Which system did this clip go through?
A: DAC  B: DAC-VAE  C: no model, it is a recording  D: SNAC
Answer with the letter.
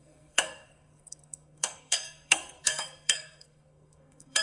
D